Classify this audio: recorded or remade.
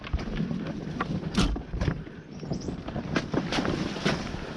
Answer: recorded